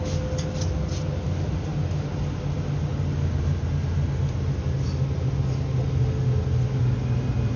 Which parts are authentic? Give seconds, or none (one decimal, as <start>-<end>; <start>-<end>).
0.0-7.6